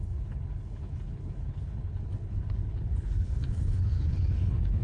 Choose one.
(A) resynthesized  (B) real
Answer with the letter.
A